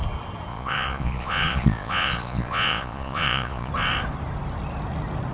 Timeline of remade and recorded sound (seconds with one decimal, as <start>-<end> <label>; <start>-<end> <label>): 0.0-0.5 recorded; 0.5-3.7 remade; 3.7-5.3 recorded

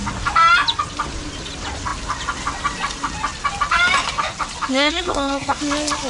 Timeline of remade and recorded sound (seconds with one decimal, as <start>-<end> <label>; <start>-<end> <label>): 0.0-4.7 recorded; 4.7-5.6 remade; 5.6-6.1 recorded

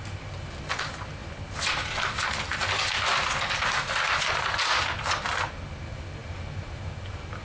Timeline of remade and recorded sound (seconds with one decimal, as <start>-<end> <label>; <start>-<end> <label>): 0.0-7.4 recorded